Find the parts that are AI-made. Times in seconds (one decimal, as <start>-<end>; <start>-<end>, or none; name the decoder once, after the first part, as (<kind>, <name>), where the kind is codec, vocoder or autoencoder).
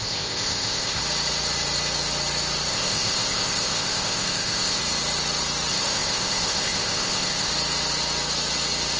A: 0.0-1.0 (codec, ZipCodec); 2.7-4.8; 5.7-7.5